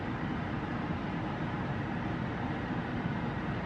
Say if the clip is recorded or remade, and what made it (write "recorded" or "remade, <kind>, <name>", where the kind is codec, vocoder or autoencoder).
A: remade, vocoder, BigVGAN v2